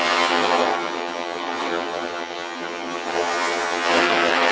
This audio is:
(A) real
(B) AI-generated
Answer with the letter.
B